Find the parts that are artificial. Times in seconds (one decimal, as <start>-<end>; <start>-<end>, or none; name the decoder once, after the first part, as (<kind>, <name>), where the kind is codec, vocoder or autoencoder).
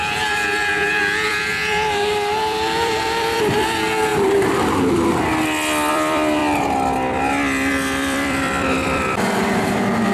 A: 0.0-4.1 (vocoder, BigVGAN v2); 5.9-6.4; 7.7-10.1